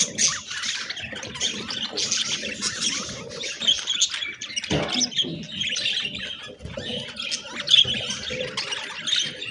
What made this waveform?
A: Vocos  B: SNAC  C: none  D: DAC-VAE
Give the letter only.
C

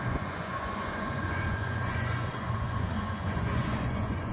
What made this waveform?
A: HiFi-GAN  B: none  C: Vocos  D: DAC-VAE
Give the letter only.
C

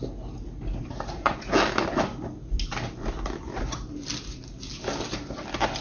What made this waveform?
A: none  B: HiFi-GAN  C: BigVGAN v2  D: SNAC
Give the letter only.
A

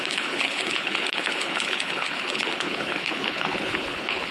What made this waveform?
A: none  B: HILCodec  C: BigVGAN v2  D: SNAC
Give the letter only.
B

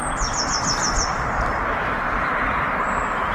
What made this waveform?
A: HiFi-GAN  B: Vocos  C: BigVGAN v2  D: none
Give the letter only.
D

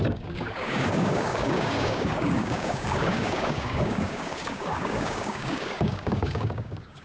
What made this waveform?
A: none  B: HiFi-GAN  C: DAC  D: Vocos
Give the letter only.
C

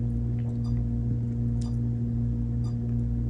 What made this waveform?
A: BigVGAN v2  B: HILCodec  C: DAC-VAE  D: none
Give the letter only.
D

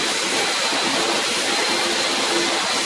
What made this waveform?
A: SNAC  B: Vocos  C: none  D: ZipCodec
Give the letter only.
C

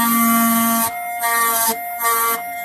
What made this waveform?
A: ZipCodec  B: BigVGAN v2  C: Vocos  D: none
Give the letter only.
D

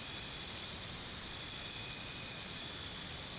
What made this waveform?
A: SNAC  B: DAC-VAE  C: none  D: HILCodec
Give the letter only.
C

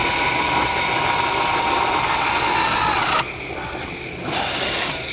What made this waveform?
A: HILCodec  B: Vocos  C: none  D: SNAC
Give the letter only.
C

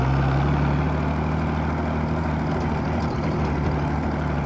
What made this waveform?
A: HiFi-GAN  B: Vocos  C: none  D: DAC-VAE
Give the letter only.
C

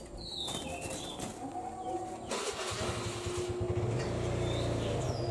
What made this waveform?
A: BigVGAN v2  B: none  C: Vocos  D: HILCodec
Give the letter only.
B